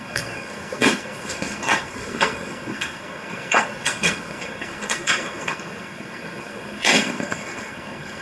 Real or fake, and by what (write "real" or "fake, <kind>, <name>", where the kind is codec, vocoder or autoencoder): fake, codec, SNAC